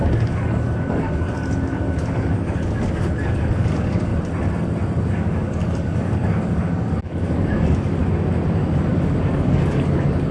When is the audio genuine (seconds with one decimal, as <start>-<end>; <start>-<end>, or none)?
4.1-5.1; 8.0-8.9